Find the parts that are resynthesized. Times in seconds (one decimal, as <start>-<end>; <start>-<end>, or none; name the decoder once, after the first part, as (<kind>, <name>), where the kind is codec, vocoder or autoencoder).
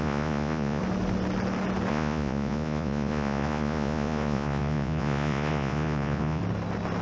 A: 0.0-0.8 (vocoder, Vocos); 1.9-6.4